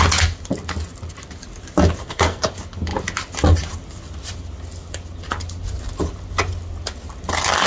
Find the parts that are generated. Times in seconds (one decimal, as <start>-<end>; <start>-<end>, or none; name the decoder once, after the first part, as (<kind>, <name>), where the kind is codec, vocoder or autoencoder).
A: 2.0-2.5 (codec, SNAC)